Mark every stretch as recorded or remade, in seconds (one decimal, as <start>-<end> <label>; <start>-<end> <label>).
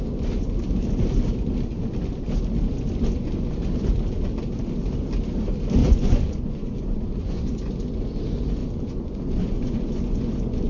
0.0-5.8 recorded; 5.8-7.5 remade; 7.5-8.6 recorded; 8.6-10.7 remade